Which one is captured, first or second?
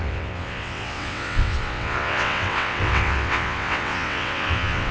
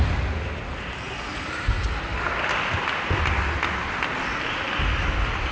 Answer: second